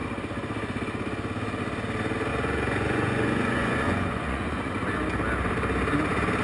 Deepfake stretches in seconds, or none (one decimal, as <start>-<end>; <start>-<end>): 2.3-4.7